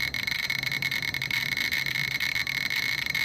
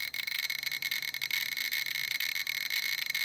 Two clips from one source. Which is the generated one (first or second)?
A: first